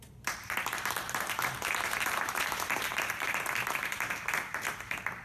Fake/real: fake